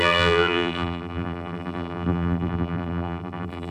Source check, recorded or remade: remade